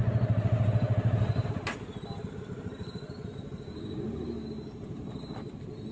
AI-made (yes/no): no